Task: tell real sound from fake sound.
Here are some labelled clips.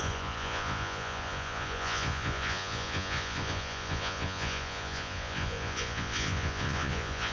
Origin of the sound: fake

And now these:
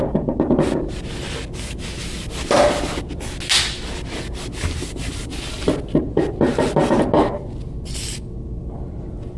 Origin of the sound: real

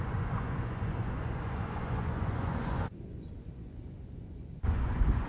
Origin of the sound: fake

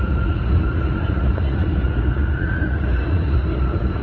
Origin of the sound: fake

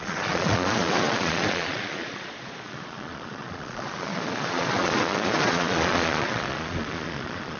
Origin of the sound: fake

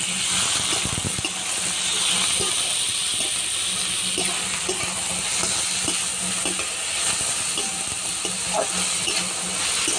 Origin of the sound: real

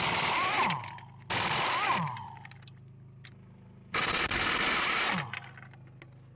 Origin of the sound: real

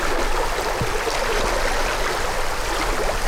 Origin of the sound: real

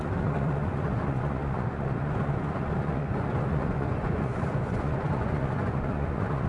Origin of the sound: fake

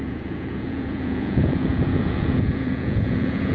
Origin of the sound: fake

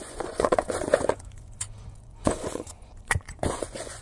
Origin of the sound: fake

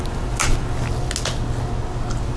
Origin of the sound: real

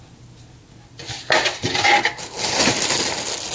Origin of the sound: real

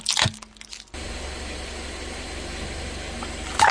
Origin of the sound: real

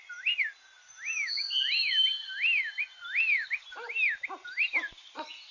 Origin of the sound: real